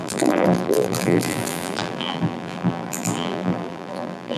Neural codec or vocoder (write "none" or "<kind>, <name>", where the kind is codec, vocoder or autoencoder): vocoder, BigVGAN v2